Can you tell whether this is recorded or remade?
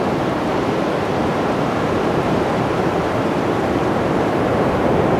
remade